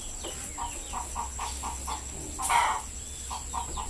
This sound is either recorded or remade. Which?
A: recorded